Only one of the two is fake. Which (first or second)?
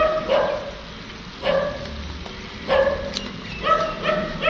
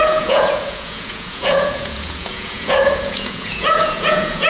second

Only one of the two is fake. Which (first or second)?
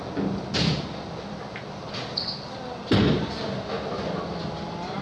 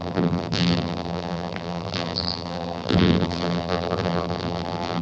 second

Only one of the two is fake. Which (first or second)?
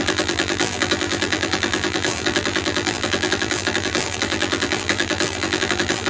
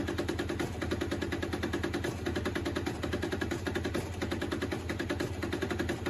first